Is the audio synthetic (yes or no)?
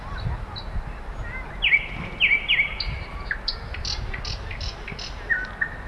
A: no